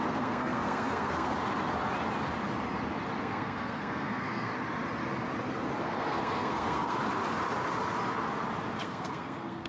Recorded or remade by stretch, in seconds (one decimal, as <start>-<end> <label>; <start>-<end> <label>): 0.0-1.3 remade; 1.3-3.2 recorded; 3.2-4.5 remade; 4.5-5.8 recorded; 5.8-7.0 remade; 7.0-8.8 recorded; 8.8-9.7 remade